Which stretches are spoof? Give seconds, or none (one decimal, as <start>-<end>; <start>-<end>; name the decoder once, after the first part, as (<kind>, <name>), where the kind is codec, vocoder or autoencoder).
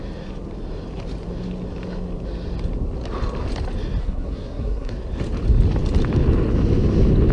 4.0-4.9 (codec, SNAC)